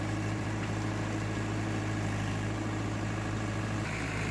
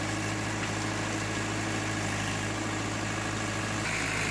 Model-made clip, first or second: first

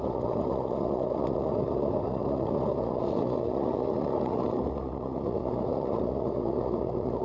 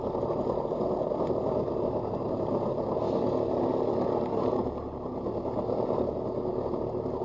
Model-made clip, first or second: first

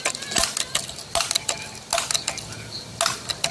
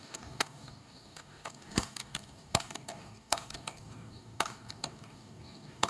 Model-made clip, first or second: second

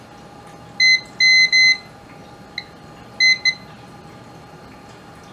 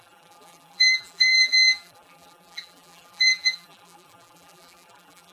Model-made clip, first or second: second